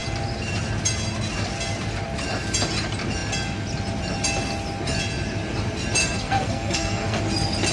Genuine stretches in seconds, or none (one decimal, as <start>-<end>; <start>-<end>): 0.0-6.0; 7.2-7.7